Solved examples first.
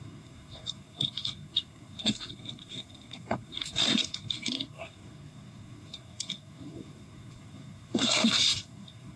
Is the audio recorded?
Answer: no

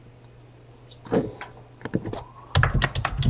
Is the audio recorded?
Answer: yes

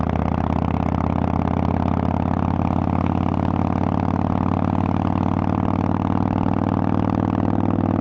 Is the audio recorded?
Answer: yes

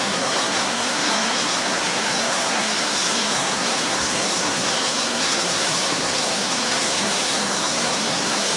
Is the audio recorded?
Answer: no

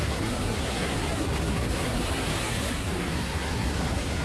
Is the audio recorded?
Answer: no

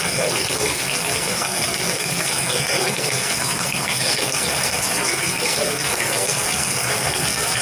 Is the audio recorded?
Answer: no